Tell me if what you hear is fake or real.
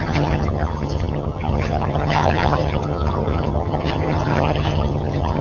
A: fake